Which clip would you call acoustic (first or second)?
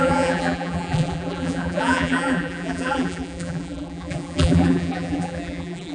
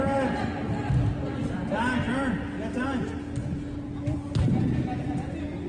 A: second